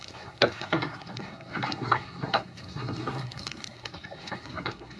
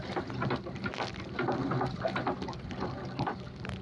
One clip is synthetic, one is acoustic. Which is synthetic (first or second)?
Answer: first